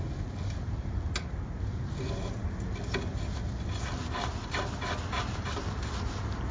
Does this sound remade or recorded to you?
recorded